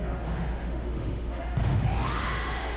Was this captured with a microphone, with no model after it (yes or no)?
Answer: no